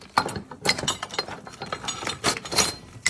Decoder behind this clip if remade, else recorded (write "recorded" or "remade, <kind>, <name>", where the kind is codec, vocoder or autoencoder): recorded